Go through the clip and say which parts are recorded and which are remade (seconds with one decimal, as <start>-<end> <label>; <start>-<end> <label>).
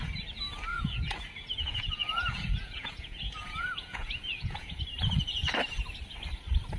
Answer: 0.0-0.7 recorded; 0.7-4.8 remade; 4.8-6.8 recorded